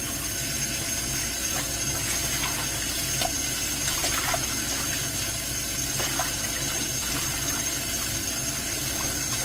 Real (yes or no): yes